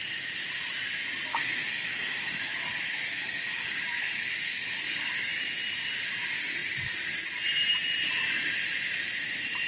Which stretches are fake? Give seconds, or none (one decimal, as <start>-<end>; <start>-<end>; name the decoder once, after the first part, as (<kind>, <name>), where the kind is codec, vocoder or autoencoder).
1.3-5.3 (codec, DAC)